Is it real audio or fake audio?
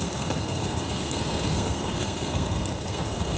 fake